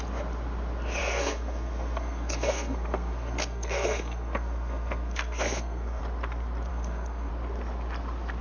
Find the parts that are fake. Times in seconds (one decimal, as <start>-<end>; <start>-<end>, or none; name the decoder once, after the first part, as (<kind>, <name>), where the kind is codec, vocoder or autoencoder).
1.0-6.0 (codec, SNAC); 6.7-7.3